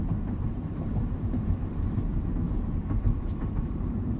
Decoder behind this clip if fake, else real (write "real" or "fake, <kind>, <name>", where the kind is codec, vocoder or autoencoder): fake, vocoder, BigVGAN v2